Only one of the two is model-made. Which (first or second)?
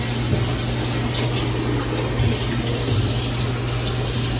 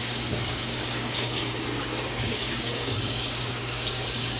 second